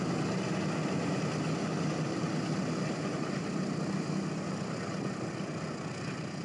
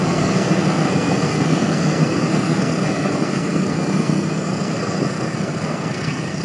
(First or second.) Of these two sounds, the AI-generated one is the second